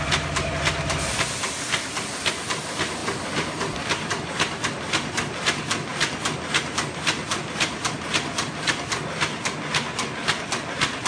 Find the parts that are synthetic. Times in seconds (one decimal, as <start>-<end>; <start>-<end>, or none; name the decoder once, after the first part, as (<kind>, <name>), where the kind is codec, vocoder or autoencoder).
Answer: none